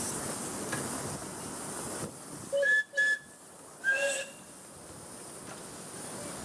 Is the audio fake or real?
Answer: real